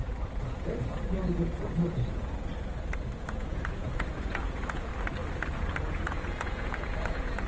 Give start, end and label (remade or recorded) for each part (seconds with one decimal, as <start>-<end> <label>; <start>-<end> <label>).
0.0-2.5 remade; 2.5-3.2 recorded; 3.2-4.9 remade; 4.9-5.9 recorded; 5.9-7.5 remade

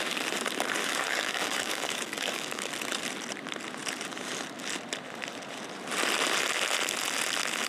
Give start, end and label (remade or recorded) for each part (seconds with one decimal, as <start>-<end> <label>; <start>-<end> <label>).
0.0-0.8 recorded; 0.8-2.7 remade; 2.7-7.7 recorded

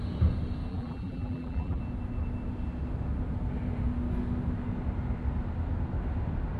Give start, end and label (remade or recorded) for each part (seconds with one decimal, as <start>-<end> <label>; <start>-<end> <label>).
0.0-0.7 recorded; 0.7-1.8 remade; 1.8-6.6 recorded

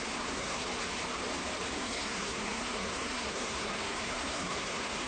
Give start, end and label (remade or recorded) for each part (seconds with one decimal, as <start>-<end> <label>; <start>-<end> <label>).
0.0-0.6 remade; 0.6-1.7 recorded; 1.7-5.1 remade

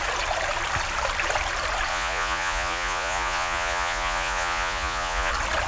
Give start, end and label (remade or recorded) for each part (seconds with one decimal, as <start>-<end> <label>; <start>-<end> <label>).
0.0-1.9 recorded; 1.9-5.3 remade; 5.3-5.7 recorded

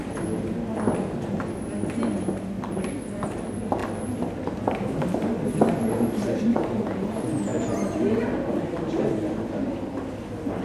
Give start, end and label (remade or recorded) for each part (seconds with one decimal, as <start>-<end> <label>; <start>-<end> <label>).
0.0-10.6 recorded

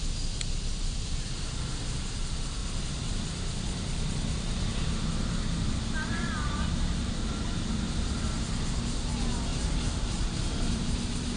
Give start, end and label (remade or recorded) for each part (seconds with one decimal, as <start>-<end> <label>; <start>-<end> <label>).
0.0-2.6 recorded; 2.6-7.1 remade; 7.1-9.5 recorded; 9.5-11.4 remade

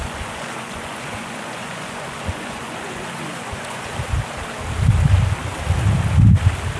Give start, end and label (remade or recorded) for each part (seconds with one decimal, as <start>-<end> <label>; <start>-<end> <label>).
0.0-3.9 remade; 3.9-6.8 recorded